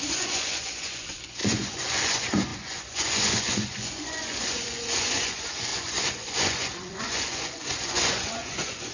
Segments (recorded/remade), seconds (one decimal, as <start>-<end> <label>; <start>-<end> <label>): 0.0-8.9 remade